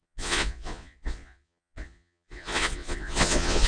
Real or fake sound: fake